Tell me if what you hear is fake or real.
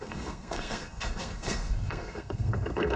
fake